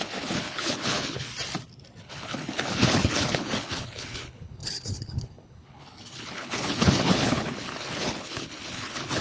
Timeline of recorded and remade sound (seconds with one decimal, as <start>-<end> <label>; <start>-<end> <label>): 0.0-1.3 remade; 1.3-2.0 recorded; 2.0-9.2 remade